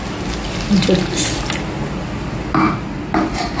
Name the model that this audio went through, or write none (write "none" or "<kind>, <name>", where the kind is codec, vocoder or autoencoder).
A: none